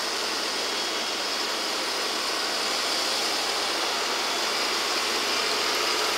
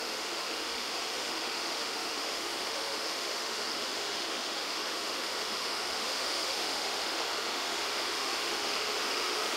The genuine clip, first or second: first